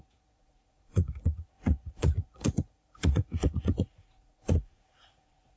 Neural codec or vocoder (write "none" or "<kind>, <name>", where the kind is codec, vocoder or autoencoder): vocoder, Vocos